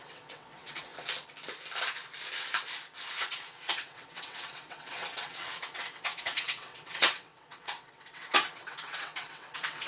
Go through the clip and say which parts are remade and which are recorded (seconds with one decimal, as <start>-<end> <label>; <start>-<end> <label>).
0.0-0.9 remade; 0.9-3.2 recorded; 3.2-9.9 remade